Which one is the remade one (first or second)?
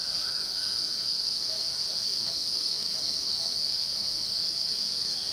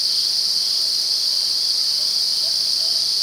first